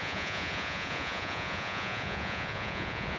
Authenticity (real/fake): fake